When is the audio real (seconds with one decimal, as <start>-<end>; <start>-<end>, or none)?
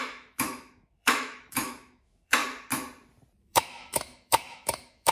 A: 2.4-3.4